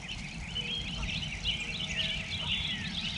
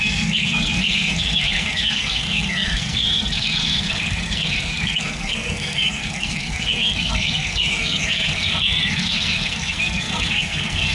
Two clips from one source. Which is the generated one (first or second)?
second